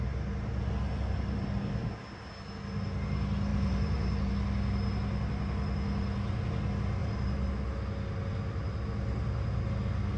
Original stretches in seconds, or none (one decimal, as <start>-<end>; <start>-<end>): 0.0-3.5; 4.3-7.0; 7.5-10.2